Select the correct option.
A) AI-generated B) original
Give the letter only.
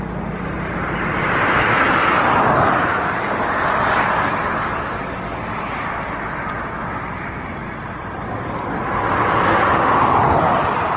B